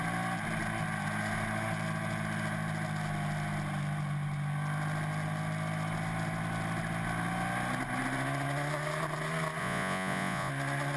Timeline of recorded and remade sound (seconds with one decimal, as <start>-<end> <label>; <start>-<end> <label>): 0.0-9.6 recorded; 9.6-10.5 remade; 10.5-11.0 recorded